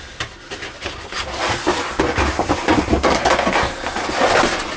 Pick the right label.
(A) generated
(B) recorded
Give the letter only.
B